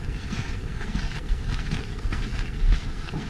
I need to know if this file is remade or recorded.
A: remade